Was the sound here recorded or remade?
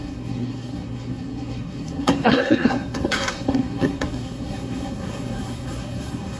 remade